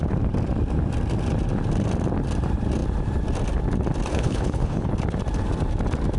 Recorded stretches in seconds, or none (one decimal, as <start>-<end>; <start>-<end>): 0.0-4.1; 4.9-6.2